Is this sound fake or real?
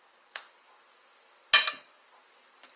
real